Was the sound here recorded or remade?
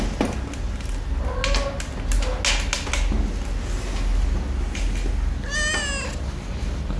recorded